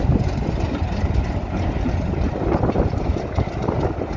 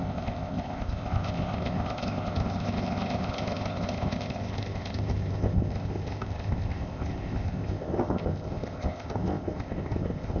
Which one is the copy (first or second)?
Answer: second